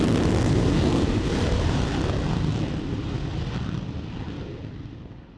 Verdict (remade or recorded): recorded